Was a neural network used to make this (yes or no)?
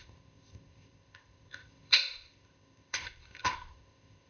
yes